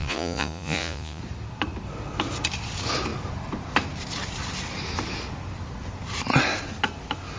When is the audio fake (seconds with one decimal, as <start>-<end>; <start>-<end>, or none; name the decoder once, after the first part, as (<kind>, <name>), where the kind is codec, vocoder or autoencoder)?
0.0-1.2 (vocoder, Vocos)